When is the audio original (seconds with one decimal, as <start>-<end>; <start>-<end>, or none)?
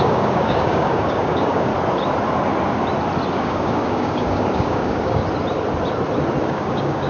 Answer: 1.7-3.3; 5.2-6.4